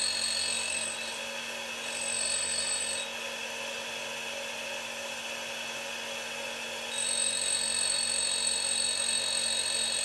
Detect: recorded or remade recorded